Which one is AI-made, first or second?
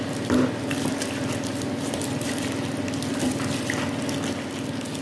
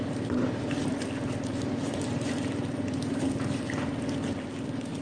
second